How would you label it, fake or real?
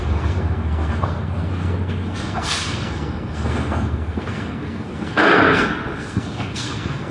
fake